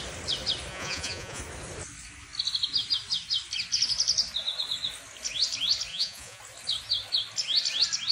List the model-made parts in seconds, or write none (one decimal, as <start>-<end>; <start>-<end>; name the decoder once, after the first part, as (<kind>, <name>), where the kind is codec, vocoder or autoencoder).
0.7-1.4 (vocoder, Vocos); 5.9-6.4